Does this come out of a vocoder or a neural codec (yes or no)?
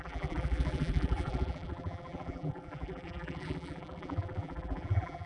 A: yes